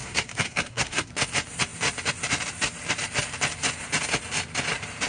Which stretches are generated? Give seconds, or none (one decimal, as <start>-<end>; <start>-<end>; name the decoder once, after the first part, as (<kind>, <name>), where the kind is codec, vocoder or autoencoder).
0.0-1.1 (codec, SNAC)